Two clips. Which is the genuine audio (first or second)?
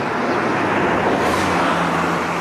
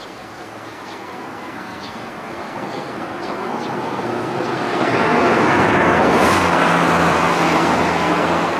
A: first